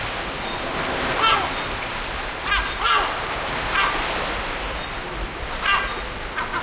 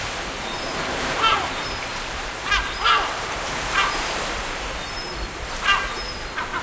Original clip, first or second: first